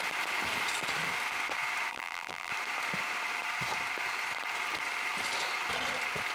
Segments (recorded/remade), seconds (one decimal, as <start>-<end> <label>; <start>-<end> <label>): 0.0-1.9 recorded; 1.9-2.5 remade; 2.5-6.3 recorded